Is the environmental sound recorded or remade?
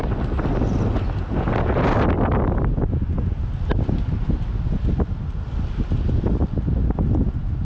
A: recorded